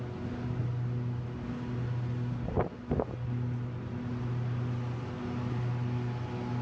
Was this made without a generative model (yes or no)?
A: yes